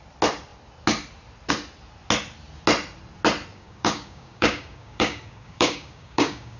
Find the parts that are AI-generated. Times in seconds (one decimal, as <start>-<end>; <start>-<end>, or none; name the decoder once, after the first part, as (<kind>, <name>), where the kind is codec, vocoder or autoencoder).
3.5-6.6 (codec, DAC)